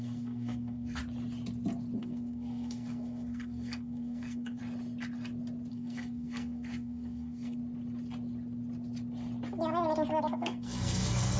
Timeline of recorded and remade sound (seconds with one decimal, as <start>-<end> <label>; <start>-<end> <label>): 0.0-1.0 remade; 1.0-2.0 recorded; 2.0-4.6 remade; 4.6-5.7 recorded; 5.7-7.6 remade; 7.6-10.2 recorded; 10.2-11.4 remade